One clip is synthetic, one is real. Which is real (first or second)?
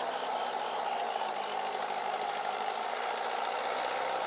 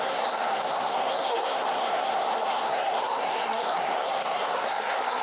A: first